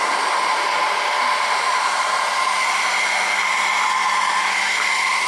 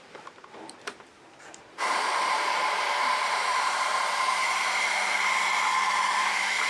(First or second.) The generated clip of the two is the second